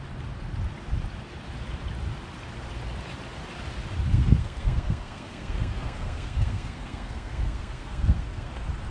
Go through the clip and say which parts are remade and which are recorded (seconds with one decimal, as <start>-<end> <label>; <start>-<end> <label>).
0.0-4.1 recorded; 4.1-8.5 remade; 8.5-8.9 recorded